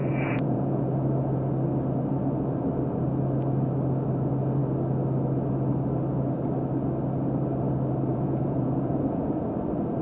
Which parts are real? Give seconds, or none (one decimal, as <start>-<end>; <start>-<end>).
0.8-8.1; 9.5-10.0